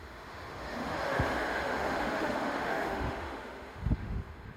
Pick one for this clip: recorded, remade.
remade